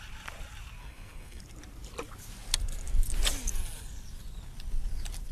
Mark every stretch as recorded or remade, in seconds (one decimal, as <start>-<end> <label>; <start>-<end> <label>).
0.0-0.8 recorded; 0.8-1.4 remade; 1.4-5.3 recorded